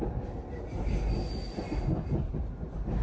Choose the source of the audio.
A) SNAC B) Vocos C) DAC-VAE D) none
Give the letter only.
D